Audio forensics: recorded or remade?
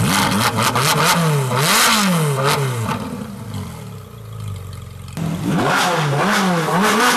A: recorded